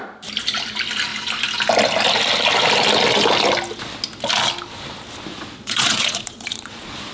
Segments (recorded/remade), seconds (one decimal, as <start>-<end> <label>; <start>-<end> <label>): 0.0-5.3 recorded; 5.3-7.1 remade